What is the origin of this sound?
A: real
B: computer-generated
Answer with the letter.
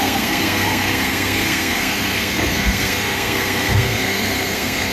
B